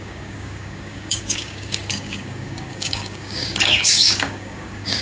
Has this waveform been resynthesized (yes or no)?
yes